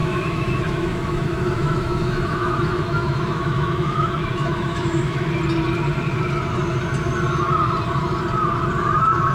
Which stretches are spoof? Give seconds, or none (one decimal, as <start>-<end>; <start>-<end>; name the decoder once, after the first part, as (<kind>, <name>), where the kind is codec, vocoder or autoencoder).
0.0-5.3 (autoencoder, DAC-VAE)